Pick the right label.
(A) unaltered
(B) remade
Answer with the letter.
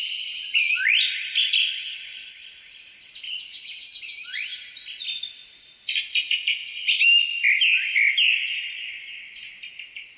A